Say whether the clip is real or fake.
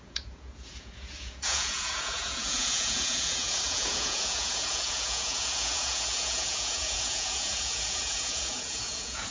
fake